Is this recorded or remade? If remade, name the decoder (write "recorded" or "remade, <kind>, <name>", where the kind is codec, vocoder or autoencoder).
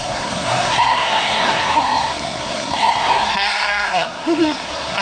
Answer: remade, codec, SNAC